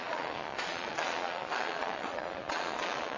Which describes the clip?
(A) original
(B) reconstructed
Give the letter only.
B